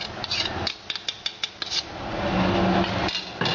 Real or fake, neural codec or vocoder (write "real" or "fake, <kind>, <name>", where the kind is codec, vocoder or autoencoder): real